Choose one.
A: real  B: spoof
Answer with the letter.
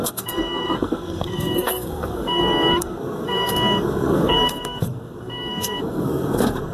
B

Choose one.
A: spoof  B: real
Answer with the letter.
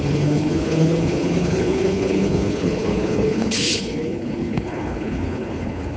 A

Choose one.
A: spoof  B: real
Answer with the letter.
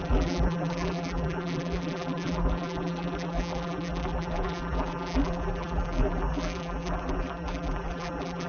A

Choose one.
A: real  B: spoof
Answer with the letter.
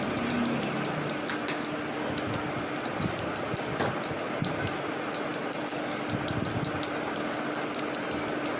A